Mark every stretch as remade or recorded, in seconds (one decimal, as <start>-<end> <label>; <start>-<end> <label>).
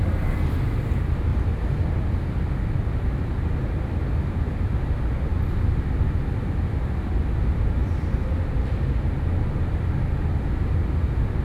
0.0-1.3 recorded; 1.3-2.0 remade; 2.0-11.4 recorded